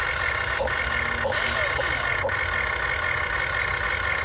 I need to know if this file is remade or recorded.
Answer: recorded